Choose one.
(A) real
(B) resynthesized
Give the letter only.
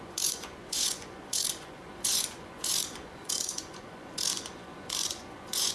B